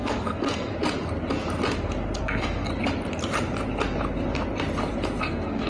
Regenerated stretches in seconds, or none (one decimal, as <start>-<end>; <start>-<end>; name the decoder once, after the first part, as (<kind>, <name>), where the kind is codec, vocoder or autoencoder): 0.0-0.7 (codec, SNAC); 2.2-2.7; 5.2-5.7